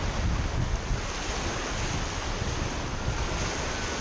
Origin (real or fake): real